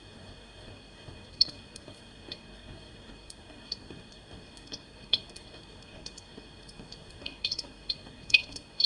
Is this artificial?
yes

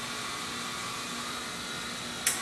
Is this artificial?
no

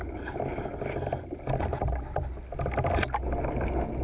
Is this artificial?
no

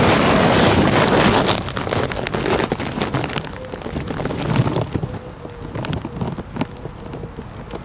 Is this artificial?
no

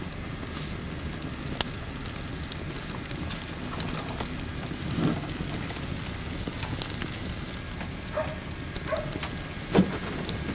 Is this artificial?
no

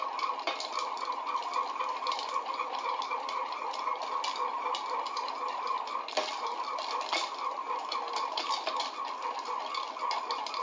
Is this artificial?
no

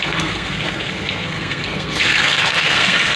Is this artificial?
yes